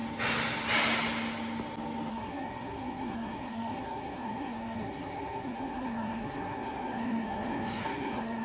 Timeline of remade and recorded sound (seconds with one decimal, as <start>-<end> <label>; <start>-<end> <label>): 0.0-2.1 recorded; 2.1-8.4 remade